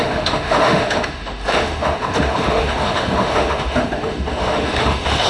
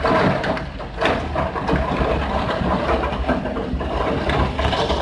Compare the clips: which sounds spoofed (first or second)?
first